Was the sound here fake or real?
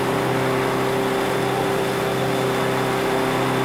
real